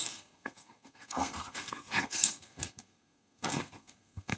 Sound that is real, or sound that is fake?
fake